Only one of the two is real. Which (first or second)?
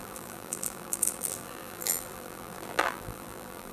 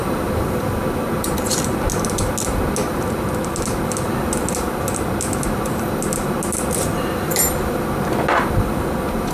second